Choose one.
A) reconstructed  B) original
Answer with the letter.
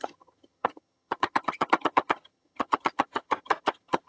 A